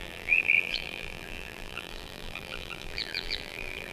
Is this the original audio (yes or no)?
no